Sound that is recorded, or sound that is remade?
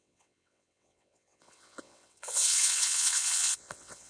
remade